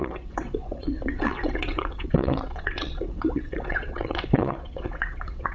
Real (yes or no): no